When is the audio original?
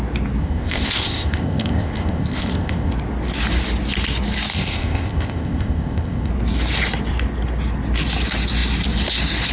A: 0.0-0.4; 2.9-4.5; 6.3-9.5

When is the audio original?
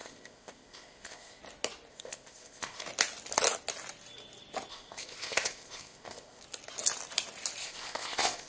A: 1.4-1.9; 2.8-4.7; 6.4-7.6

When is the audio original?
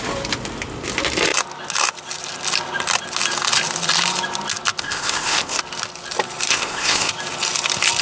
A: 0.0-4.8; 5.6-6.5; 7.1-8.0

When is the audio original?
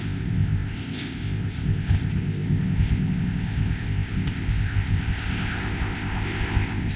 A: none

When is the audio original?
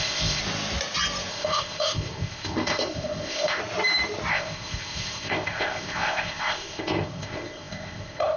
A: 0.4-1.3; 3.6-4.3